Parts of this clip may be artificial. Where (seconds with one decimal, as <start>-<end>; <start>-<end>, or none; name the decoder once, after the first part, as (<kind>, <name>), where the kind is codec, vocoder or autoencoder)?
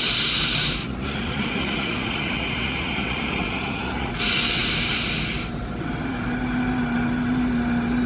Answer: 0.8-4.1 (vocoder, Vocos)